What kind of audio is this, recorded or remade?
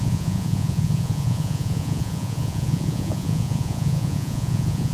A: remade